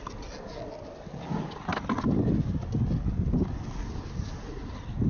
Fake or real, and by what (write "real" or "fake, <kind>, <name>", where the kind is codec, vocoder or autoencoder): real